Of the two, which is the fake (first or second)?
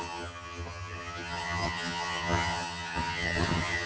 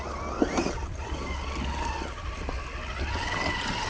first